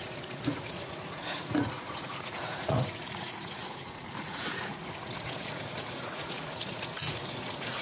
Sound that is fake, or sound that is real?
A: fake